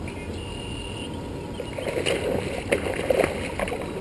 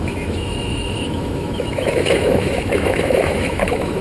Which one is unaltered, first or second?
first